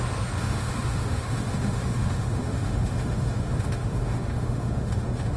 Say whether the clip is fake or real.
fake